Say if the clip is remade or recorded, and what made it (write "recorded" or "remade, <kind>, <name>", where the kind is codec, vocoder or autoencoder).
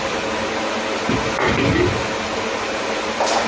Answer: recorded